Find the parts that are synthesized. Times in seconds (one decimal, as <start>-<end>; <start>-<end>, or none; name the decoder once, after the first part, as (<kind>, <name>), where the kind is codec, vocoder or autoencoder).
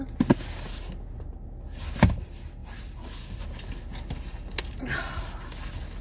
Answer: none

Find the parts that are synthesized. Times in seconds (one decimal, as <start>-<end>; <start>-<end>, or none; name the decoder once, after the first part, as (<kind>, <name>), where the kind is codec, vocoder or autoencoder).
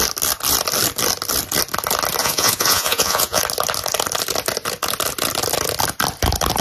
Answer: 2.2-3.4 (vocoder, Vocos)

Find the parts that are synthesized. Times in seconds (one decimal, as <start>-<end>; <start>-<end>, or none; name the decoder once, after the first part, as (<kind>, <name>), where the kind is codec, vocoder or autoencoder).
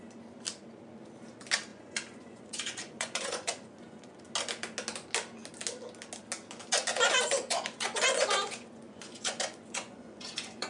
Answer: 1.7-4.2 (vocoder, Vocos); 6.9-10.7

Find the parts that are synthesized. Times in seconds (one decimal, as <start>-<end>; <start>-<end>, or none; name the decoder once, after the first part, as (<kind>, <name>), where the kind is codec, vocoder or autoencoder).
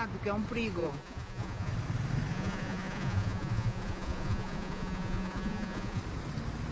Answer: 0.8-1.7 (vocoder, Vocos); 2.3-6.0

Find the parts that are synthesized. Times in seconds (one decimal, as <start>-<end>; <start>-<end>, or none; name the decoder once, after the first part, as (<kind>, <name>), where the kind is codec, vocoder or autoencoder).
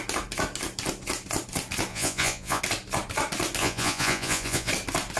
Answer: 1.9-2.6 (vocoder, Vocos); 3.6-4.7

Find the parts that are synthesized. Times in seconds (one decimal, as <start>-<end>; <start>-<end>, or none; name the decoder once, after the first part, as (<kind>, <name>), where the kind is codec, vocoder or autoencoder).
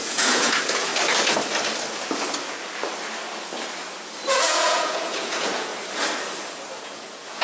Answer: 0.0-0.9 (vocoder, Vocos); 4.3-5.7; 6.8-7.4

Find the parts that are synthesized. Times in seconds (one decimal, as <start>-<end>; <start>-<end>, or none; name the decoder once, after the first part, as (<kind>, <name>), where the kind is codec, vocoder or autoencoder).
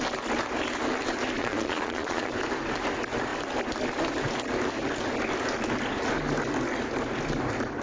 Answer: 1.4-2.3 (vocoder, Vocos)